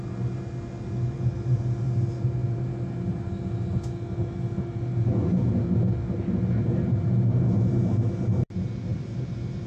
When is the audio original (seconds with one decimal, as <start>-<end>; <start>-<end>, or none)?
0.0-8.9